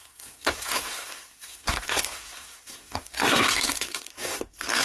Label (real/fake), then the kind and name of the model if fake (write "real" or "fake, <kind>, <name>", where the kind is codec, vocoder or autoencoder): fake, codec, SNAC